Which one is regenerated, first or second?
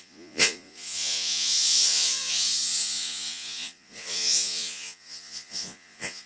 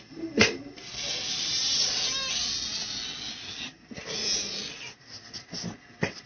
first